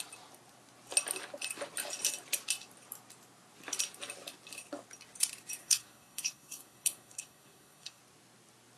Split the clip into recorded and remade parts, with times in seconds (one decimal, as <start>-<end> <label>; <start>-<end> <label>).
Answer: 0.0-5.6 recorded; 5.6-8.0 remade; 8.0-8.8 recorded